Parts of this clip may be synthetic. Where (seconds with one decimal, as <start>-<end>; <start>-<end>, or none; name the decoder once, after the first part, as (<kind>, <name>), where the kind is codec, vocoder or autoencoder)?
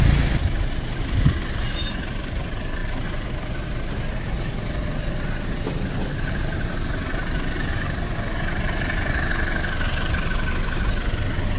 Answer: none